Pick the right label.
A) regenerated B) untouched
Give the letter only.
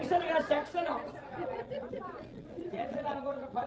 A